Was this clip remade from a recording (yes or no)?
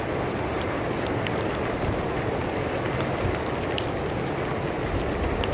no